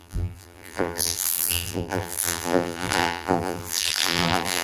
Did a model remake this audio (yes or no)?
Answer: yes